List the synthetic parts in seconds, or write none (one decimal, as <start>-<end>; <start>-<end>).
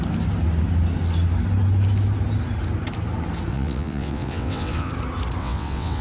3.5-4.9; 5.4-6.0